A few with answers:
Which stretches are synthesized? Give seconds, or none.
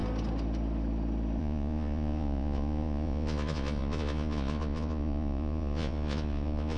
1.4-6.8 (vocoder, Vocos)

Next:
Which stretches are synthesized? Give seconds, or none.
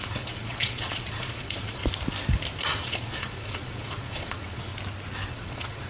0.0-1.8 (vocoder, Vocos); 2.6-4.7; 5.3-5.9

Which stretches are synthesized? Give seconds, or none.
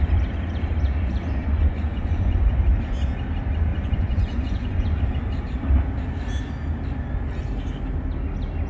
1.4-2.5 (vocoder, Vocos); 3.7-5.0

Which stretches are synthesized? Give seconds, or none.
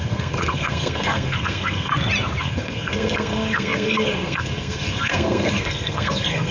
0.0-1.9 (codec, SNAC); 2.4-6.5